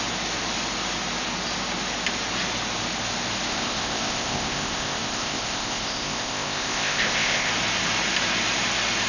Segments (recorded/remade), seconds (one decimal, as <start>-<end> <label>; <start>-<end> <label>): 0.0-3.5 recorded; 3.5-7.5 remade; 7.5-9.1 recorded